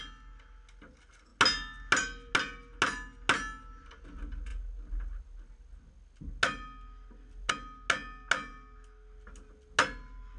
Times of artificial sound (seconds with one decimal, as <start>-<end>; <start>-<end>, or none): none